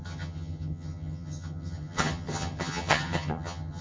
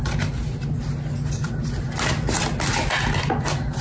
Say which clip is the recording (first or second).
second